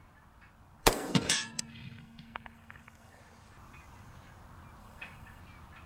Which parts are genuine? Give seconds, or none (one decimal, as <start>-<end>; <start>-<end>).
0.0-0.8; 3.2-4.8; 5.4-5.9